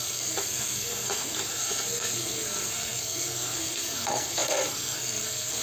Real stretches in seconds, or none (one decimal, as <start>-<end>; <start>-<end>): none

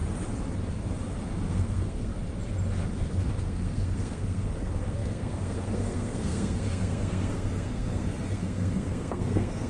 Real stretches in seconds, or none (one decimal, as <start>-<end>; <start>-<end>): 0.0-1.5; 2.1-3.4

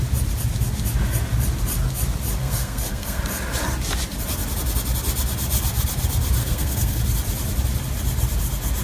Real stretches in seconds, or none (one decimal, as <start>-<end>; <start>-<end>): 0.0-2.4; 3.2-6.4; 7.0-8.8